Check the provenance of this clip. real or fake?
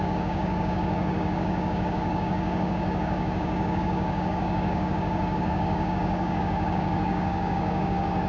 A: fake